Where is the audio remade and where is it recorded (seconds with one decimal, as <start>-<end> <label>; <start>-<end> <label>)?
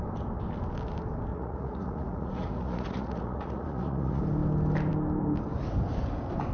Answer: 0.0-1.3 recorded; 1.3-4.2 remade; 4.2-6.5 recorded